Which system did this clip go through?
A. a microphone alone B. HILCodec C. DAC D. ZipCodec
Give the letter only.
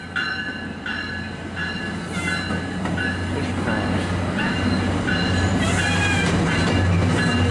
A